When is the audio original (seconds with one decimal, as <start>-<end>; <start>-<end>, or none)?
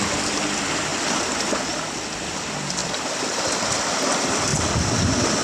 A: 0.0-5.4